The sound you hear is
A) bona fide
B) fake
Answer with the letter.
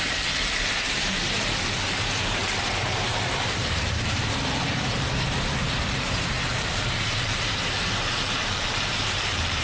B